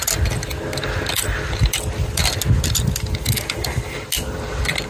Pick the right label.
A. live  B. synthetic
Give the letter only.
A